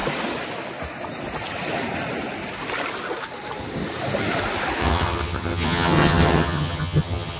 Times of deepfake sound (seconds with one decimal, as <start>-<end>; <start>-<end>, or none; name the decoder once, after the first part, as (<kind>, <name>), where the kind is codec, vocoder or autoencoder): 4.8-7.4 (vocoder, HiFi-GAN)